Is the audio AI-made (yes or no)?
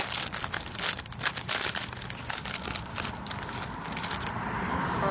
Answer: no